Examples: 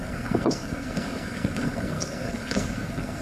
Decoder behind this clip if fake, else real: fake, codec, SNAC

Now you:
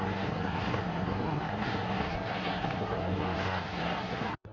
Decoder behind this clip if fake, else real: fake, codec, SNAC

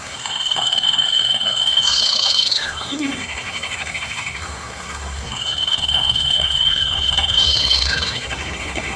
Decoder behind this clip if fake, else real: fake, codec, SNAC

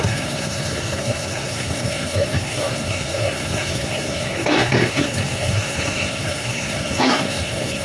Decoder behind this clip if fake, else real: fake, codec, SNAC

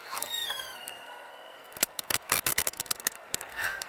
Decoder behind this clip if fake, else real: fake, codec, SNAC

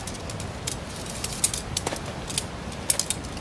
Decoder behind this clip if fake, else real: real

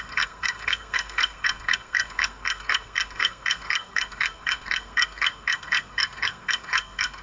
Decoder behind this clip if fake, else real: fake, codec, SNAC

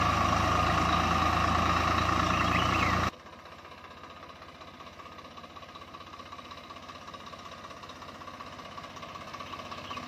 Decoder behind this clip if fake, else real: real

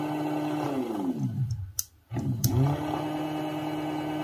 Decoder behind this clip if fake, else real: real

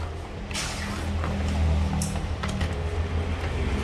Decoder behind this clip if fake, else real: real